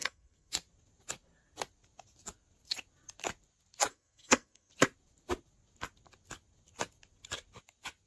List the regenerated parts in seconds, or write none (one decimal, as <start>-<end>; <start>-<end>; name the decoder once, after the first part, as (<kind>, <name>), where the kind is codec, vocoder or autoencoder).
0.0-0.5 (codec, SNAC); 3.9-4.7